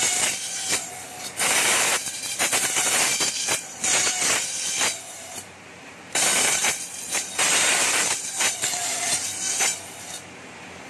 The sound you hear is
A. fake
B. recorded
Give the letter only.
A